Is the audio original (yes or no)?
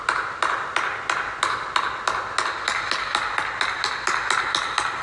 yes